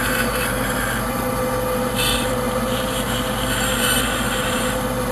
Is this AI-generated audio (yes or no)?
yes